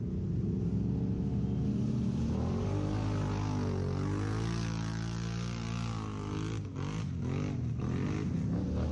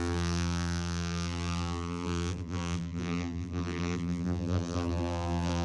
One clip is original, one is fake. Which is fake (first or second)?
second